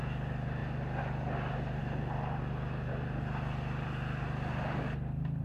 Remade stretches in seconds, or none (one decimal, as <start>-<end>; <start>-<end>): none